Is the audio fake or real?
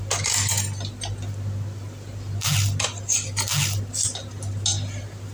real